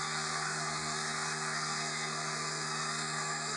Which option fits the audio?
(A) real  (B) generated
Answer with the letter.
B